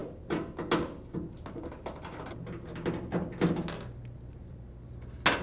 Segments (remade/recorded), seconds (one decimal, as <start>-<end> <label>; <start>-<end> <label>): 0.0-5.4 recorded